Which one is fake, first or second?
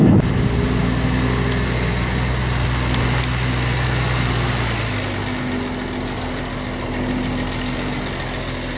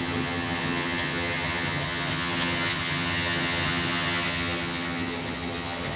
second